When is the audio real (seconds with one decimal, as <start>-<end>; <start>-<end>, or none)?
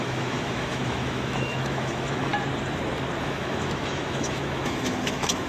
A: 2.3-3.2